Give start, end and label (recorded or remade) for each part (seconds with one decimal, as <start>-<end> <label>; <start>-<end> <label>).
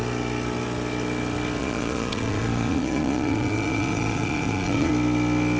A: 0.0-1.6 recorded; 1.6-4.9 remade; 4.9-5.6 recorded